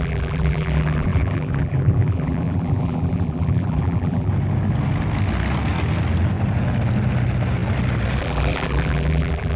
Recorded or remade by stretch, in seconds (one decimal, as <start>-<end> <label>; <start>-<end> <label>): 0.0-4.3 remade; 4.3-8.2 recorded; 8.2-9.6 remade